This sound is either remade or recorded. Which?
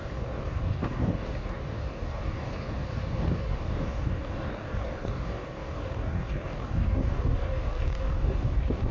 remade